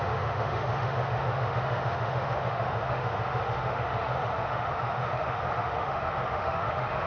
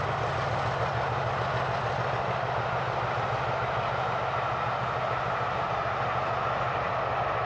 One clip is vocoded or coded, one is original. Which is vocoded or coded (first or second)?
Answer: first